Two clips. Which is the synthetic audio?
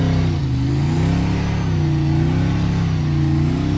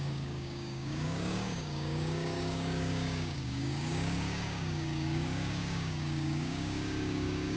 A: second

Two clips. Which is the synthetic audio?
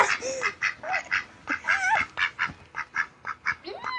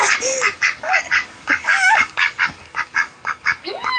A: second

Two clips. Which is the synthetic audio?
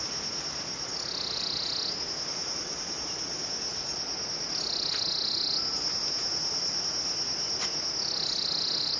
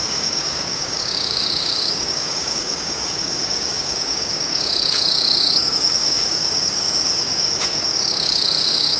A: second